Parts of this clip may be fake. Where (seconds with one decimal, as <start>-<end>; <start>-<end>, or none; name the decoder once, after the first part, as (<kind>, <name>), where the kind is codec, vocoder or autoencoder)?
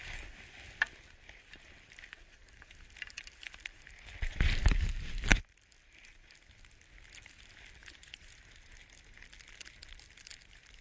7.8-8.3 (vocoder, Vocos)